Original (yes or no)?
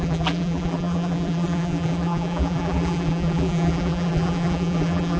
no